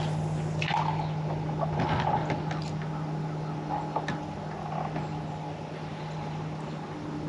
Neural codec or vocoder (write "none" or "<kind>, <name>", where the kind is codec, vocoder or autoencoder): none